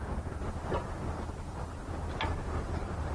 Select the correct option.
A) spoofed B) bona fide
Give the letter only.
B